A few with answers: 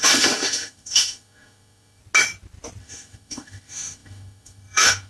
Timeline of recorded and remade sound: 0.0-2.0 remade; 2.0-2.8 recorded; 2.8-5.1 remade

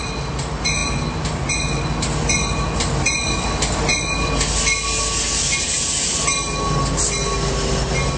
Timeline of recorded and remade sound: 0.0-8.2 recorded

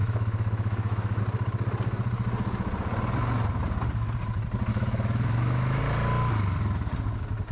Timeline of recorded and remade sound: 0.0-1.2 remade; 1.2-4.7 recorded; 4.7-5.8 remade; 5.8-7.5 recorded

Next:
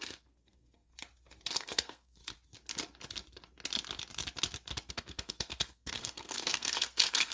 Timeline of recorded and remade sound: 0.0-0.9 remade; 0.9-1.5 recorded; 1.5-2.2 remade; 2.2-4.9 recorded; 4.9-7.3 remade

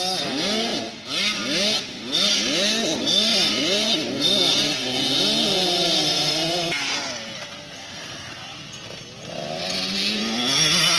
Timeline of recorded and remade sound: 0.0-7.8 recorded; 7.8-8.3 remade; 8.3-11.0 recorded